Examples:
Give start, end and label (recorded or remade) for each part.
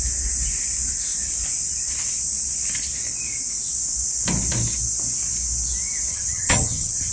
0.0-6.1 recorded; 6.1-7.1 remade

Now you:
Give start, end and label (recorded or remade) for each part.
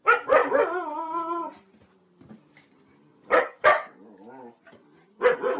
0.0-3.1 recorded; 3.1-4.0 remade; 4.0-5.6 recorded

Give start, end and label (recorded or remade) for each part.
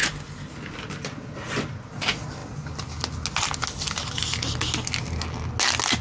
0.0-6.0 recorded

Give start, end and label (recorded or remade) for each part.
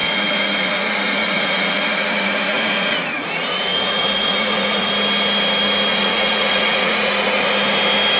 0.0-4.9 remade; 4.9-5.9 recorded; 5.9-7.4 remade; 7.4-8.2 recorded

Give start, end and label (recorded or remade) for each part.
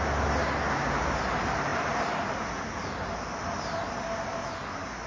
0.0-5.1 recorded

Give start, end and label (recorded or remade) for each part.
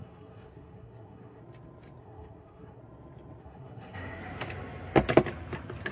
0.0-1.4 remade; 1.4-2.0 recorded; 2.0-2.8 remade; 2.8-3.4 recorded; 3.4-4.2 remade; 4.2-5.9 recorded